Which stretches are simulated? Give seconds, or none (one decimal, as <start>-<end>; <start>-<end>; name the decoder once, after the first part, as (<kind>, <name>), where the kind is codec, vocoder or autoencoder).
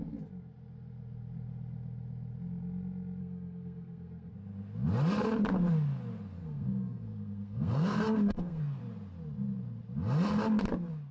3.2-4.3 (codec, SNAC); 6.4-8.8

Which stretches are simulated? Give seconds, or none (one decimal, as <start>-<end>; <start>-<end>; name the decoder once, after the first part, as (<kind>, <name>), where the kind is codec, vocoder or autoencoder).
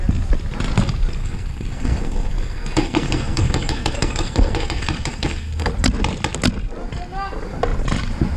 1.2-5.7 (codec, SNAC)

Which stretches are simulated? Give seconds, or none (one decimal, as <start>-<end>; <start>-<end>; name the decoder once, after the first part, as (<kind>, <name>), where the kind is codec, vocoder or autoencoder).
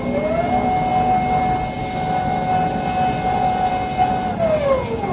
none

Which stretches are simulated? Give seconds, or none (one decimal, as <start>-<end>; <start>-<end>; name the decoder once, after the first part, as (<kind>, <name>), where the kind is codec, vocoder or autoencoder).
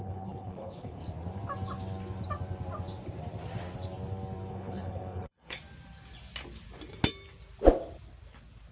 0.0-1.0 (codec, HILCodec); 4.5-5.6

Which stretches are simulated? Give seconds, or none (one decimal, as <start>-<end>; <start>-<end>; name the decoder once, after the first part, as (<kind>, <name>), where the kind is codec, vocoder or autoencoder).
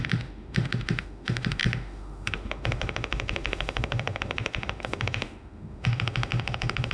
0.0-6.9 (autoencoder, DAC-VAE)